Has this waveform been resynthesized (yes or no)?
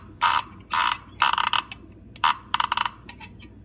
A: no